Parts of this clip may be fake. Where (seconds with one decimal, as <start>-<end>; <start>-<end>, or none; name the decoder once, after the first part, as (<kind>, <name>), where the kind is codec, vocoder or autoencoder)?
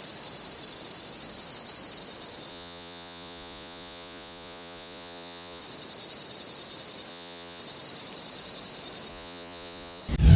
2.5-5.6 (vocoder, Vocos); 7.1-7.6; 9.1-10.0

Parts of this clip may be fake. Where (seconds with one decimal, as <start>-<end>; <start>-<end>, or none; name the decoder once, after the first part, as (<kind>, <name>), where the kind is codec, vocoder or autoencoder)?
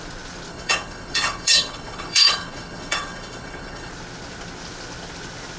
0.5-3.9 (codec, HILCodec)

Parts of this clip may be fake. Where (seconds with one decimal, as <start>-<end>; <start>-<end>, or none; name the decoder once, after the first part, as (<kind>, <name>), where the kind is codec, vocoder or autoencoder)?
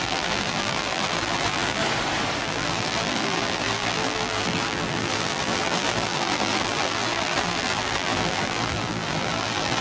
0.0-1.8 (vocoder, BigVGAN v2); 2.4-9.8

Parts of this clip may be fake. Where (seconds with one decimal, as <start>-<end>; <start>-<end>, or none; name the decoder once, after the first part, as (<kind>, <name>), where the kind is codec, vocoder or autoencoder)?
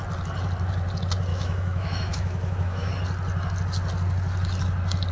1.3-2.9 (autoencoder, DAC-VAE)